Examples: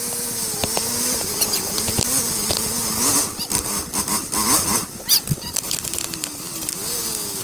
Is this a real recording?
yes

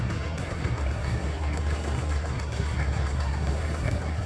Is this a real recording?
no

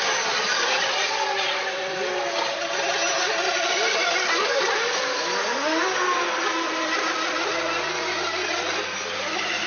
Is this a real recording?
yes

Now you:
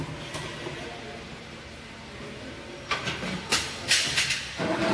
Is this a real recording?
yes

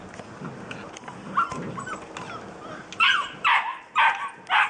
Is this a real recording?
yes